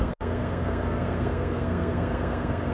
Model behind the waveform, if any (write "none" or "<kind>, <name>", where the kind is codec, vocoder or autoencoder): codec, SNAC